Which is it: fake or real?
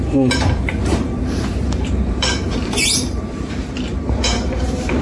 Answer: fake